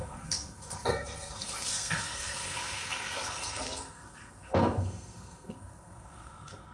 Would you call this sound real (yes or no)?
no